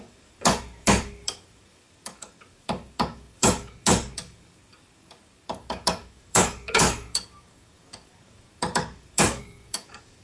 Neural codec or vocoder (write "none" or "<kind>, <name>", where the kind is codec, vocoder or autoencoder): codec, DAC